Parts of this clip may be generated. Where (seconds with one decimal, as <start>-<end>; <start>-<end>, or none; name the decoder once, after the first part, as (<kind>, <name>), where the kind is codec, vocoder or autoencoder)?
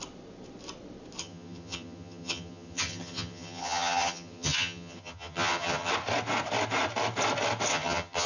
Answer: 1.2-5.9 (vocoder, HiFi-GAN); 7.7-8.3